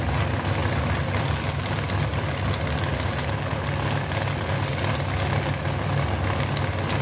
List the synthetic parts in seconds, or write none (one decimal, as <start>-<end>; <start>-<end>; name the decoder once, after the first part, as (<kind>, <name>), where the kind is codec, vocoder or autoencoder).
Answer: none